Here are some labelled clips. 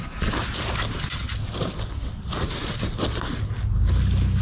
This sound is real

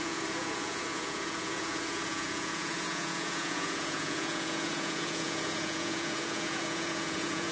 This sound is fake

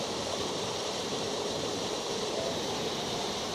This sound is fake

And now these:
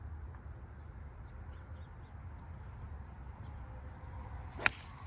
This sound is real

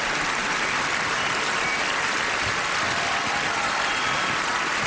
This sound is real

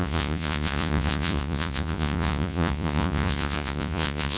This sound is fake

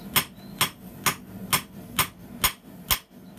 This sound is real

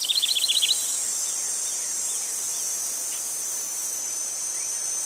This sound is fake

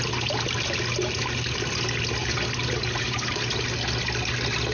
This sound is real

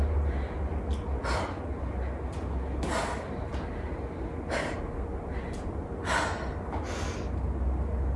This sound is real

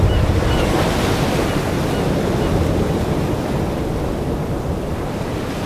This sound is real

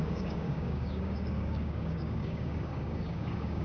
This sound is fake